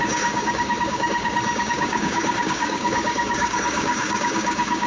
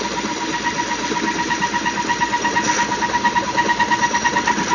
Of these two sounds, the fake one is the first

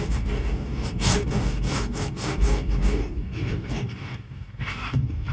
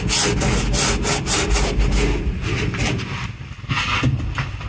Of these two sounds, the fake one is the first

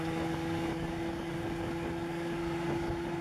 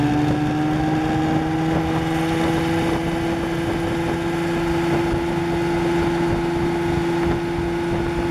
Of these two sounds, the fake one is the first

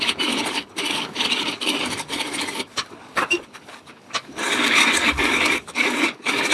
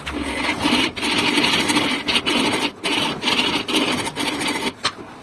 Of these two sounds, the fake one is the first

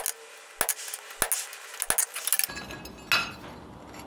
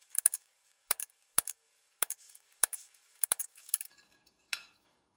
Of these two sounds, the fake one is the second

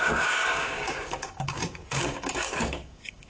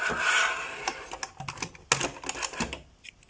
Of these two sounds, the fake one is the first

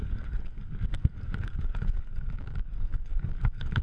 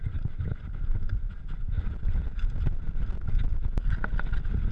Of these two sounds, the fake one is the first